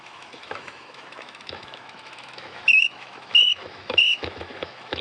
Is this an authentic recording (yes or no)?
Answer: no